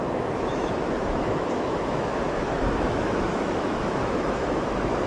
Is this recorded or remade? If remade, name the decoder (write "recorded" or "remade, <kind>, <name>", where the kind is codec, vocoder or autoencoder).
remade, autoencoder, DAC-VAE